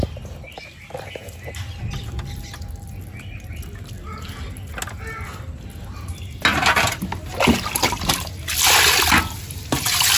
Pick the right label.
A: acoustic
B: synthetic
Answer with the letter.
A